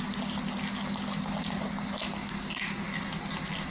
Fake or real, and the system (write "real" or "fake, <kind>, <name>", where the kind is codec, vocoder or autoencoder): real